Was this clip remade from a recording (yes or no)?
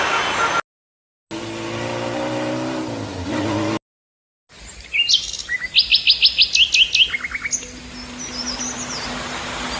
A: no